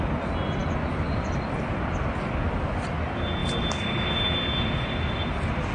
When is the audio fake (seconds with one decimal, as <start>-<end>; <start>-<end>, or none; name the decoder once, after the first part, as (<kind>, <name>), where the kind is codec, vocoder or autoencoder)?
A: none